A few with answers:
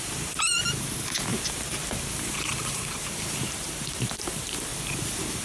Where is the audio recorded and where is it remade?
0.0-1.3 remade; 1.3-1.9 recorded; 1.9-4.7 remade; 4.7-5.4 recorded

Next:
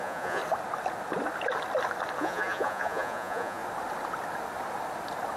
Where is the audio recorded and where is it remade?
0.0-0.4 remade; 0.4-2.2 recorded; 2.2-3.6 remade; 3.6-5.4 recorded

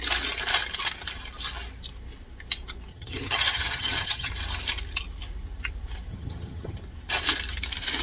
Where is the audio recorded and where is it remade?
0.0-2.9 recorded; 2.9-4.3 remade; 4.3-6.1 recorded; 6.1-6.8 remade; 6.8-8.0 recorded

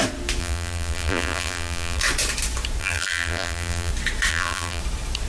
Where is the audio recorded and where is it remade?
0.0-0.4 recorded; 0.4-2.0 remade; 2.0-2.8 recorded; 2.8-3.9 remade; 3.9-4.3 recorded; 4.3-4.8 remade; 4.8-5.3 recorded

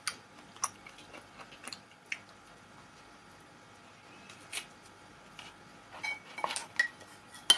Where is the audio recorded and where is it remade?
0.0-7.6 recorded